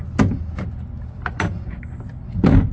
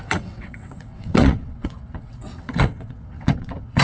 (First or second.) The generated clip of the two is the second